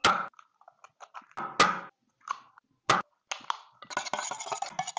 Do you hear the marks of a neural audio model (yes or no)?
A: no